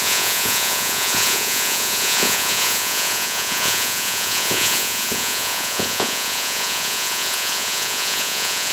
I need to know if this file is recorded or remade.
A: remade